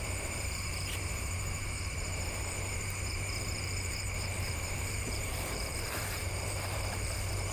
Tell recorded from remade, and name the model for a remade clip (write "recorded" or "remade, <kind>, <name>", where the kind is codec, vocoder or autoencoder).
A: remade, vocoder, BigVGAN v2